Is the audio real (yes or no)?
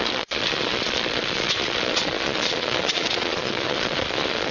no